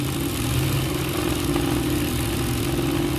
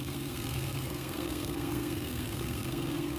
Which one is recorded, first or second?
first